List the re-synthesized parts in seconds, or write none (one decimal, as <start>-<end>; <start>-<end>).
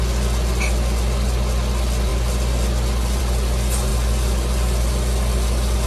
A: none